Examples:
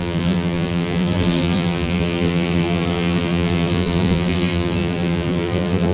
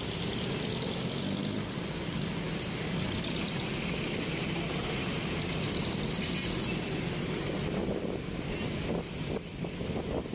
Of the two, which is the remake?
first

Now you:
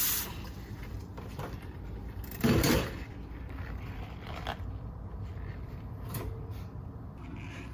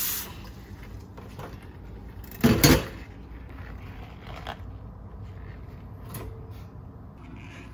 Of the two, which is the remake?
first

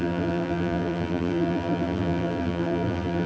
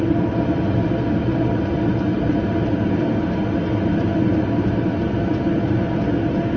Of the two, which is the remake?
first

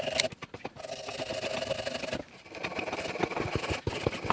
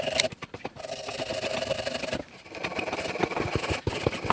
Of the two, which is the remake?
second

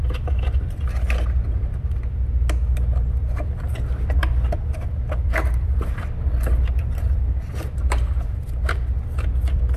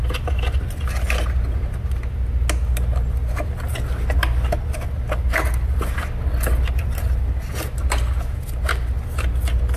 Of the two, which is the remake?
first